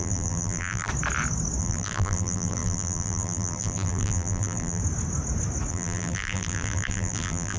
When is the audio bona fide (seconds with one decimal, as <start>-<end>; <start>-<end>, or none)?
0.9-1.6; 4.8-5.7

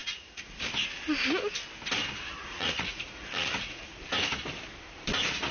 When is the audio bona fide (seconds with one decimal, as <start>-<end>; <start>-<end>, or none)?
0.6-2.4; 3.8-5.5

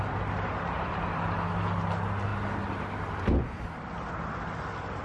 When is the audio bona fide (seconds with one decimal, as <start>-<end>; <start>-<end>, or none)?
0.0-0.5; 1.5-5.0

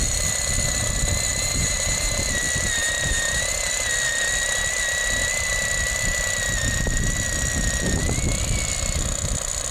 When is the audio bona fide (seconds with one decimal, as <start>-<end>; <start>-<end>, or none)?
0.0-1.3; 2.2-2.8; 3.4-9.7

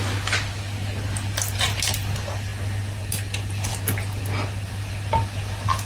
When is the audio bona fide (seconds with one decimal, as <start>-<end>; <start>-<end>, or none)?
0.0-5.9